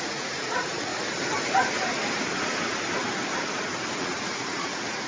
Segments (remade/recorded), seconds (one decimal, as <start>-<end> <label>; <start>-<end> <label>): 0.0-0.9 remade; 0.9-4.0 recorded; 4.0-5.1 remade